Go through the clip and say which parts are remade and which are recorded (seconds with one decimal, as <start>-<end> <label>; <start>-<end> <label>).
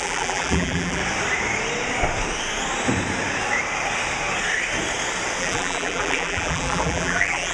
0.0-1.0 remade; 1.0-5.4 recorded; 5.4-7.5 remade